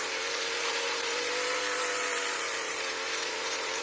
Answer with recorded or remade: remade